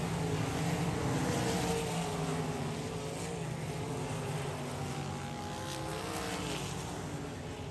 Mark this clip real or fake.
real